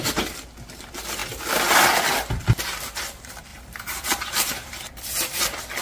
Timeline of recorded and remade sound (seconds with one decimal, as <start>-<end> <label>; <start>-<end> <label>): 0.0-3.5 recorded; 3.5-5.0 remade; 5.0-5.8 recorded